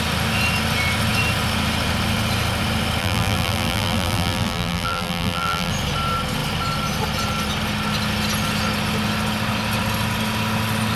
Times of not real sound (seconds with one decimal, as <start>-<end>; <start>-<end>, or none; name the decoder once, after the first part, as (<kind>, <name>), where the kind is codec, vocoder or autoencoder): 3.0-5.7 (vocoder, BigVGAN v2)